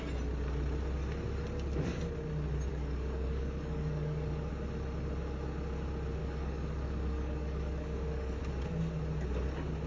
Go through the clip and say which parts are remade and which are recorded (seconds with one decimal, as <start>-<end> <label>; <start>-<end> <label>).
0.0-2.7 recorded; 2.7-4.5 remade; 4.5-6.2 recorded; 6.2-8.4 remade; 8.4-9.9 recorded